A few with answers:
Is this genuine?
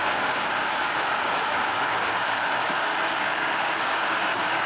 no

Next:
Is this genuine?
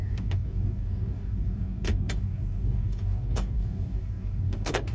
no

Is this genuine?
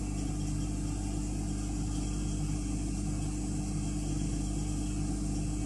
yes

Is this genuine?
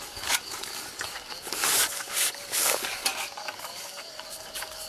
no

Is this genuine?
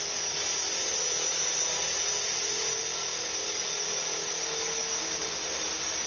yes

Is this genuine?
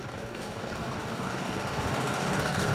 no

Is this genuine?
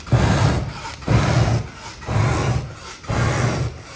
yes